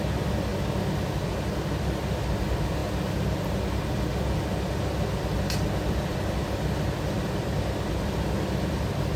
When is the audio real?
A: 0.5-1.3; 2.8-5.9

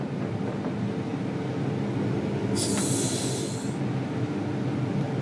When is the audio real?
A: 0.0-5.2

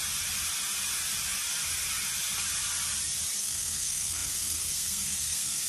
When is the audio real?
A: 0.0-3.4

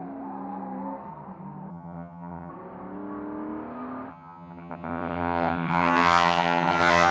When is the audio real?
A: 0.0-1.7; 2.5-4.1

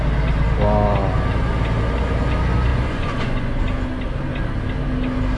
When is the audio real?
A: 0.0-2.7; 3.6-5.4

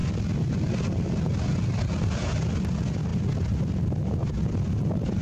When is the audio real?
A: 0.0-5.2

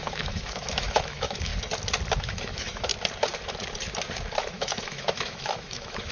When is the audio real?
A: 1.5-2.2; 2.9-4.4